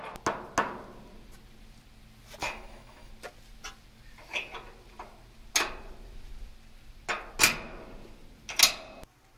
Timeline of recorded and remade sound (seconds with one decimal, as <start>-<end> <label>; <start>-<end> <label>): 0.0-2.4 recorded; 2.4-3.1 remade; 3.1-9.4 recorded